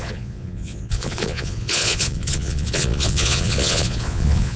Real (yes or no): no